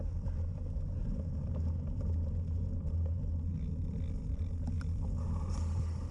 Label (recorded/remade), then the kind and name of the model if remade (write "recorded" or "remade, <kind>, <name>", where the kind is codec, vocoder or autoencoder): recorded